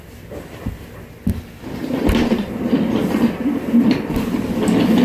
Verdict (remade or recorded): recorded